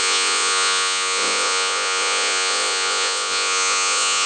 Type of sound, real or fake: fake